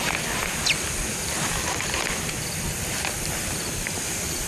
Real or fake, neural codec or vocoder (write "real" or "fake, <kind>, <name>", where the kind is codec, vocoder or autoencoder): real